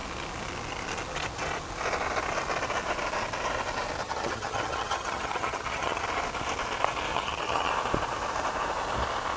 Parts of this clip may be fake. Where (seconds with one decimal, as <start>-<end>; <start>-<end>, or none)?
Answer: 4.0-6.0; 7.1-7.7